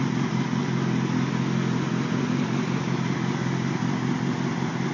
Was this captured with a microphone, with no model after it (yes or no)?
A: yes